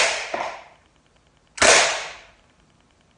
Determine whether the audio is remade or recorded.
recorded